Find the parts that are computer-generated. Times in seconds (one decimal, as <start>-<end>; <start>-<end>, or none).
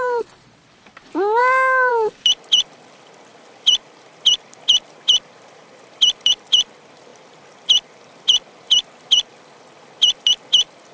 0.0-1.4; 1.9-10.9